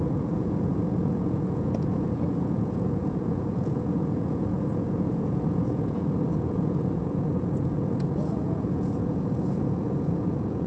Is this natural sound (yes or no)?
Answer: no